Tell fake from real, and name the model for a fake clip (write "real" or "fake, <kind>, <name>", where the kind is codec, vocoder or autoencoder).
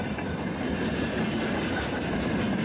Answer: fake, vocoder, BigVGAN v2